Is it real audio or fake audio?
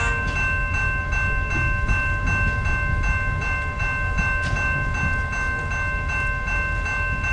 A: real